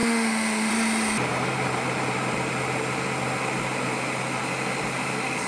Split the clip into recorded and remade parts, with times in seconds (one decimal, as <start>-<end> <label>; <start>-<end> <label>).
0.0-0.7 remade; 0.7-5.5 recorded